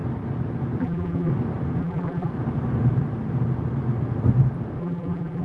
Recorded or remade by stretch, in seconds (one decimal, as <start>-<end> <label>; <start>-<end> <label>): 0.0-0.8 recorded; 0.8-1.3 remade; 1.3-1.8 recorded; 1.8-2.3 remade; 2.3-4.8 recorded; 4.8-5.4 remade